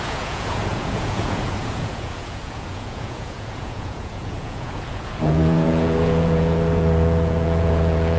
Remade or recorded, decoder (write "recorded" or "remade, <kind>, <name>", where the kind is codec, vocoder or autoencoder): remade, vocoder, Vocos